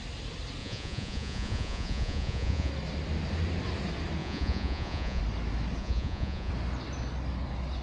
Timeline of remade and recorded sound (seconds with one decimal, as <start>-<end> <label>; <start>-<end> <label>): 0.0-0.6 recorded; 0.6-2.7 remade; 2.7-4.2 recorded; 4.2-5.2 remade; 5.2-5.8 recorded; 5.8-6.5 remade; 6.5-7.8 recorded

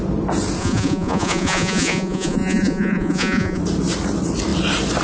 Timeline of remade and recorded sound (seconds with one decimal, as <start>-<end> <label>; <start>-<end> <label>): 0.0-0.6 recorded; 0.6-3.6 remade; 3.6-5.0 recorded

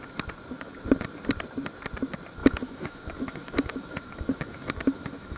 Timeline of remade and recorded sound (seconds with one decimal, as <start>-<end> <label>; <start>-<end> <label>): 0.0-2.4 recorded; 2.4-5.4 remade